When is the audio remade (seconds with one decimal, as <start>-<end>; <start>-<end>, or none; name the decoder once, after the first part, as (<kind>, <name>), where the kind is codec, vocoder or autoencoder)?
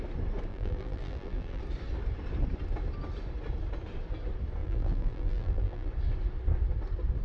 0.5-1.6 (vocoder, BigVGAN v2); 4.6-5.9